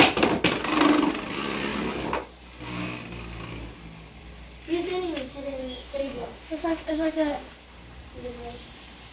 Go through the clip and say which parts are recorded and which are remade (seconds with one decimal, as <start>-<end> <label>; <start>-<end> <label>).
0.0-5.6 recorded; 5.6-7.5 remade; 7.5-9.1 recorded